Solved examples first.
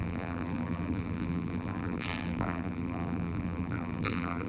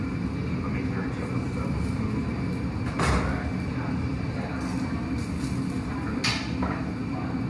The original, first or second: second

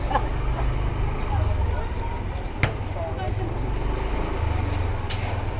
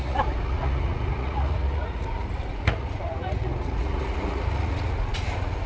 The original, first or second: first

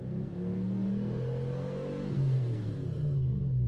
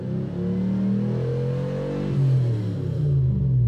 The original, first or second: second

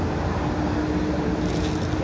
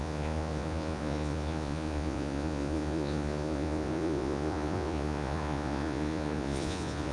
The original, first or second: first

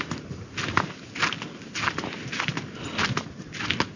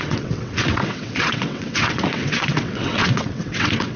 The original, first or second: first